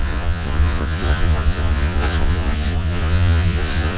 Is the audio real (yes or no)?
no